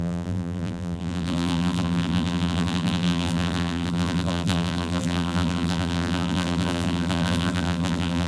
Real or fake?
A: fake